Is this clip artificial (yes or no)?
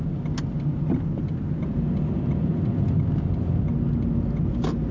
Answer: no